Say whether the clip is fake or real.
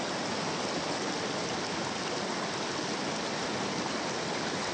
real